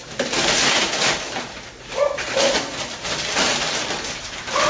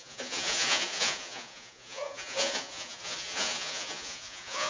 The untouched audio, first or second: first